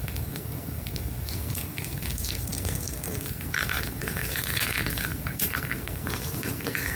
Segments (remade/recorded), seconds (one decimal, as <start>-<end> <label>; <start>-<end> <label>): 0.0-7.0 remade